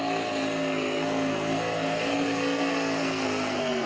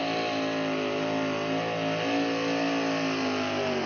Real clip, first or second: second